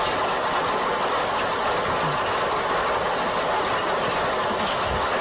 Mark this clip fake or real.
real